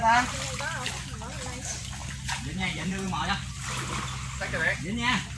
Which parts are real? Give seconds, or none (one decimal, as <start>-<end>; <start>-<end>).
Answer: 0.0-2.0; 3.3-5.4

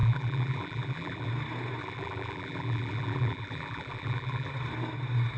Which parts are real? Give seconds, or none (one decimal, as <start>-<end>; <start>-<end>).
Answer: 1.3-1.8; 4.5-5.4

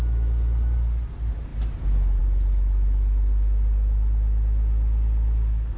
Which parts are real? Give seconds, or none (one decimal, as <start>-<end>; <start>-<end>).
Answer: 0.0-5.8

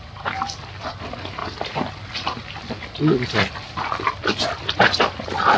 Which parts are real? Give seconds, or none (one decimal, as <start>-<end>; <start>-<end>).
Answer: 0.0-5.6